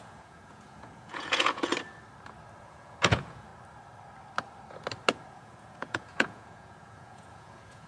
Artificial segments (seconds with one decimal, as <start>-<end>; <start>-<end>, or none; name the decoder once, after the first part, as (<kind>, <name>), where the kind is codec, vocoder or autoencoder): 0.0-1.7 (vocoder, Vocos); 2.6-3.5; 5.3-7.9